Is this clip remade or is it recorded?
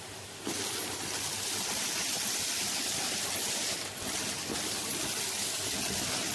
recorded